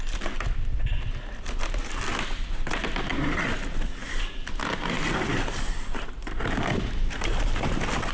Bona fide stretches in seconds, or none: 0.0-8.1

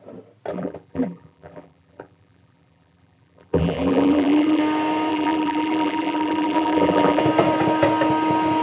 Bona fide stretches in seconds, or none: 0.0-0.5; 4.6-5.1; 7.2-8.6

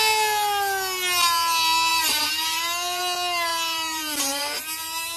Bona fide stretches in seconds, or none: 0.0-1.9; 3.0-3.5

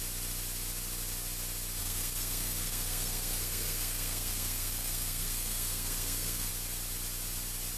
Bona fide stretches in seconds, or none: 0.0-1.8; 6.5-7.8

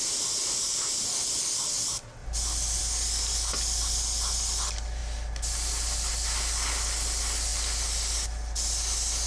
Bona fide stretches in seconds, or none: 0.0-9.3

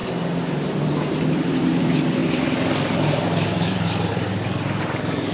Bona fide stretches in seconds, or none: 0.0-1.8

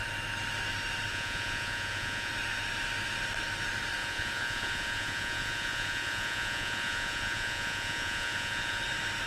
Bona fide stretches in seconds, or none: 0.0-1.1; 2.3-4.0; 8.8-9.3

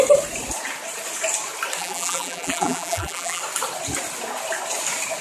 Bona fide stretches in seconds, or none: 0.0-1.8; 3.4-5.2